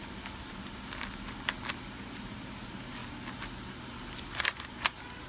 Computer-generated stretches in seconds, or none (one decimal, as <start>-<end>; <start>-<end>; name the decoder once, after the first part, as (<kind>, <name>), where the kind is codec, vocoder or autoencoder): 1.7-3.0 (vocoder, BigVGAN v2); 3.7-5.3

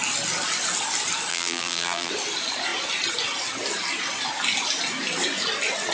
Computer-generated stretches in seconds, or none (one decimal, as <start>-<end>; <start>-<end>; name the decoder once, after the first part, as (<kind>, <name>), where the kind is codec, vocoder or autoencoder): 1.3-2.1 (vocoder, BigVGAN v2)

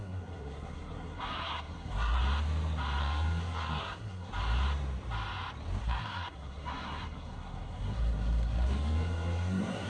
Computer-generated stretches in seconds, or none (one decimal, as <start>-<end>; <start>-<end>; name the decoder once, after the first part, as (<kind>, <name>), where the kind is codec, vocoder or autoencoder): 0.0-2.2 (codec, SNAC); 3.0-4.3; 5.8-9.9

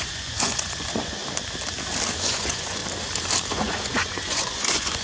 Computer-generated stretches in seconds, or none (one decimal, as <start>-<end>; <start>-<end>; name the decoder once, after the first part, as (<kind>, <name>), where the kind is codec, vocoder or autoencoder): 0.0-1.2 (vocoder, Vocos); 2.2-2.8; 3.5-5.0